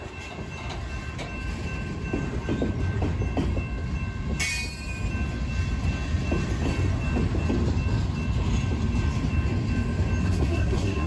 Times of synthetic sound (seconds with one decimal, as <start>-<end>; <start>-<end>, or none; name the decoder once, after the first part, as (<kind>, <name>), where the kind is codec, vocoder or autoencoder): 10.2-11.1 (codec, SNAC)